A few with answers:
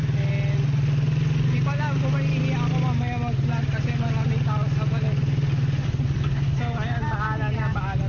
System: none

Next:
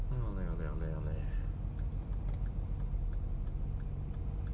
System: none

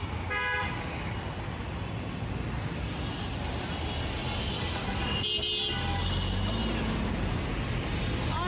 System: none